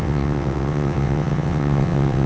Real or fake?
fake